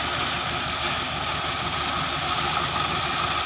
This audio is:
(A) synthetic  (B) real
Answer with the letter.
B